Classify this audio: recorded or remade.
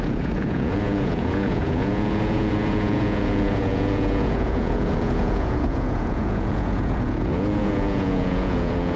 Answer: remade